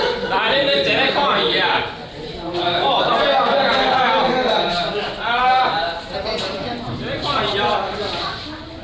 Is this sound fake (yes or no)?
no